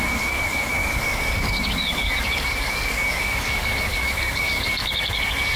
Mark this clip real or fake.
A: fake